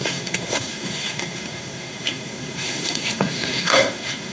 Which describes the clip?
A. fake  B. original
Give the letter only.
A